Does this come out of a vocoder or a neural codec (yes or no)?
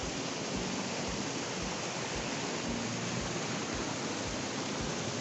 no